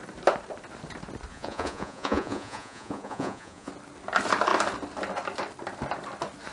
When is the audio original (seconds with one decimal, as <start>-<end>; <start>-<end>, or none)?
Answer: 0.0-1.3; 3.7-6.5